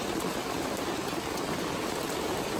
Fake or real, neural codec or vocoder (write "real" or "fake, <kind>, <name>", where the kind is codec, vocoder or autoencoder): real